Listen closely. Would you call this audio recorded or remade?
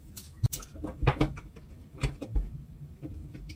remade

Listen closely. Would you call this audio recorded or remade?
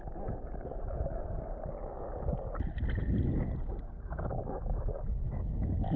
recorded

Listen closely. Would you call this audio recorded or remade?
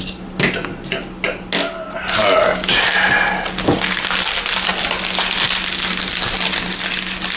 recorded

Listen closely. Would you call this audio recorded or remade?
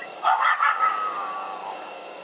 remade